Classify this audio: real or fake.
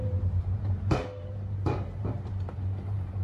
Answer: fake